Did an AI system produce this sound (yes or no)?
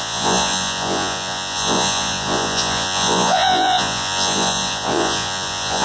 yes